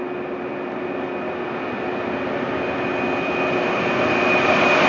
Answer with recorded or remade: recorded